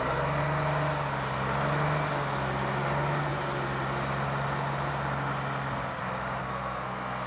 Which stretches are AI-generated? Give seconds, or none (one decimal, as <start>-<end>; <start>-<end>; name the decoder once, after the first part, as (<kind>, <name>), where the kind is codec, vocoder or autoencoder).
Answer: 6.4-7.3 (codec, SNAC)